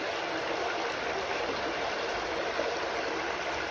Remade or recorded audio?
recorded